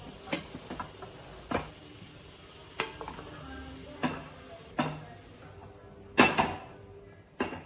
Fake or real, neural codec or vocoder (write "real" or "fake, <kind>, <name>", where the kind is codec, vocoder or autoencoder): real